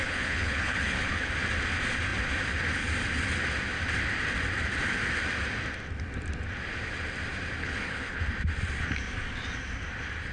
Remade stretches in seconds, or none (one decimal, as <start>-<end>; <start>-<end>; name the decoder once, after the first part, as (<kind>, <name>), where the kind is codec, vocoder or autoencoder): 0.0-1.3 (codec, HILCodec); 7.6-8.2